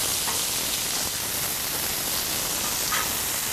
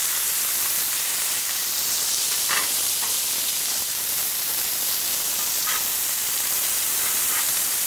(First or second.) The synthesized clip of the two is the second